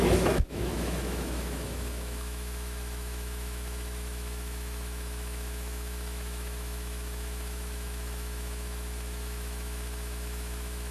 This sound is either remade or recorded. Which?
remade